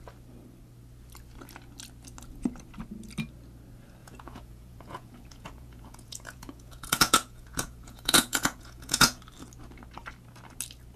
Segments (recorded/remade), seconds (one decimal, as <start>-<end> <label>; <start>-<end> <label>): 0.0-4.0 recorded; 4.0-9.2 remade; 9.2-11.0 recorded